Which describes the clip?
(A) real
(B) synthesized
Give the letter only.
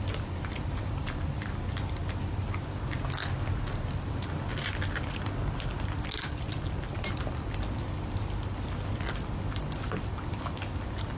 A